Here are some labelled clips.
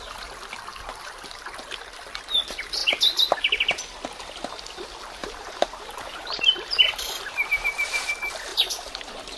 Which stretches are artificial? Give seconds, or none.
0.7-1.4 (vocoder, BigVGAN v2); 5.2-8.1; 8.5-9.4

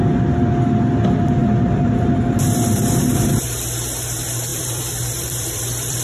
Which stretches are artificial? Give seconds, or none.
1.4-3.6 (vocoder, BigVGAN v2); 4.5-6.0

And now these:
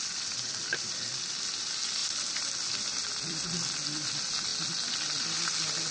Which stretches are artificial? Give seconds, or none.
2.0-3.5 (vocoder, BigVGAN v2)

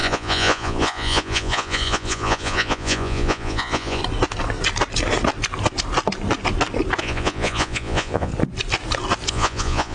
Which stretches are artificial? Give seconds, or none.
0.0-4.0 (vocoder, Vocos); 7.0-8.3; 9.3-9.9

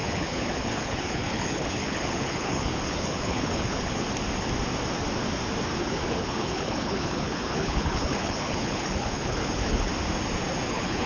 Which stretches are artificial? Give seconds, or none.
0.0-4.0 (codec, HILCodec); 5.8-9.9; 10.7-11.1

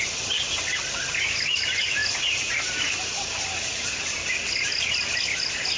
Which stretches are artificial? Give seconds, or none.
none